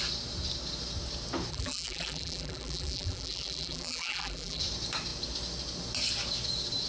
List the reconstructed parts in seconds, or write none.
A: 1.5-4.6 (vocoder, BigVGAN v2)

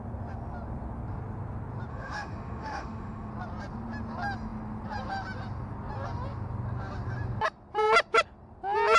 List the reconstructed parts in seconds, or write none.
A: 1.9-3.3 (autoencoder, DAC-VAE)